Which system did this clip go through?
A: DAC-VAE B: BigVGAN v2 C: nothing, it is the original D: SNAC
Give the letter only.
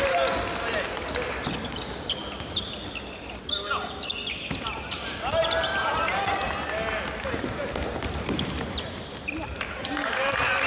C